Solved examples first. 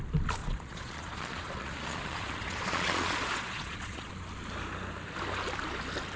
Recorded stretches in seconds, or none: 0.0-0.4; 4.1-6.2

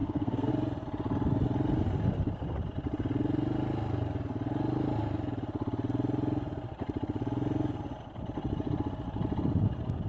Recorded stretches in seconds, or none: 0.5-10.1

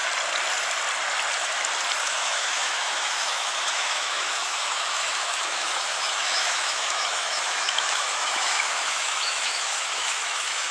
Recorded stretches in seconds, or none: 0.0-2.0

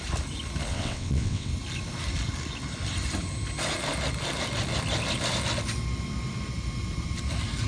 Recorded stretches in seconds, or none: 0.0-0.7; 1.5-7.7

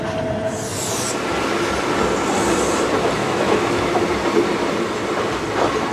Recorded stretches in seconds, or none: 0.0-3.2; 4.0-5.9

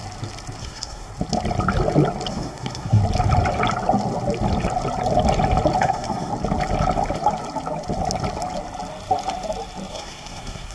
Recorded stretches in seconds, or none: 0.0-0.6; 1.1-2.3; 3.0-5.8; 6.3-9.9